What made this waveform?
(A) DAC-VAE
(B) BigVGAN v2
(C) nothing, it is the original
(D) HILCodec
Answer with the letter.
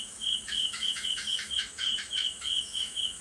A